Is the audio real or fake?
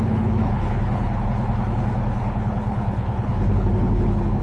fake